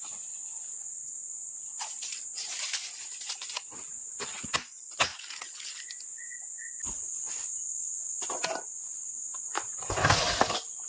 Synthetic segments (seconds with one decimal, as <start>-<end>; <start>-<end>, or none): 5.1-5.8